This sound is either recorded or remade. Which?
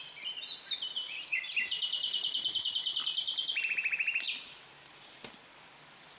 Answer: remade